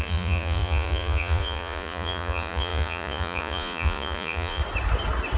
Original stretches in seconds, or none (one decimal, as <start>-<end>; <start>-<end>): 4.6-5.4